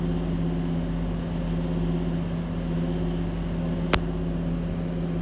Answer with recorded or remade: recorded